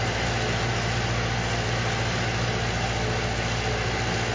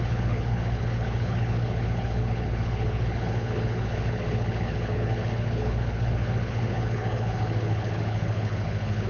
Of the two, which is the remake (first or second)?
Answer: second